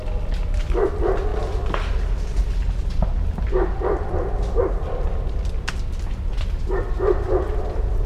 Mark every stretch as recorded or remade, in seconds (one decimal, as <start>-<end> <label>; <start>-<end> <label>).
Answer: 0.0-1.3 recorded; 1.3-2.5 remade; 2.5-8.1 recorded